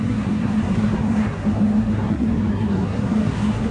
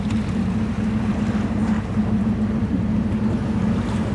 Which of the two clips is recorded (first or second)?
second